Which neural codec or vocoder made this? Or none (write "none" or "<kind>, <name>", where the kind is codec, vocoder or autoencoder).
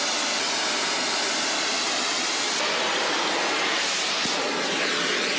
none